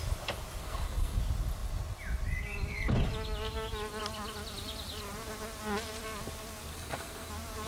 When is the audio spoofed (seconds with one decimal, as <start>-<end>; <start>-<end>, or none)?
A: 0.6-1.2; 6.7-7.3